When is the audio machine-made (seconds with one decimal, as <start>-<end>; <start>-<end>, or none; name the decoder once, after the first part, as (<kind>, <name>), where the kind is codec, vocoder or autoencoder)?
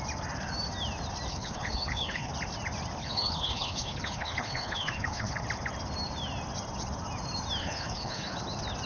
1.3-2.3 (codec, HILCodec); 3.0-5.4; 7.6-8.4